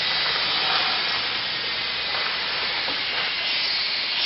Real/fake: real